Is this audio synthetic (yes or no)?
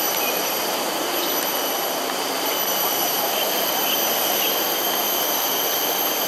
yes